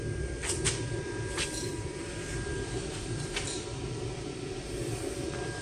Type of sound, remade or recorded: remade